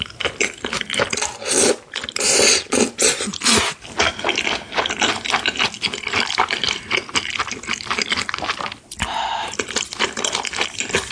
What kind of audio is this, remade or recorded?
recorded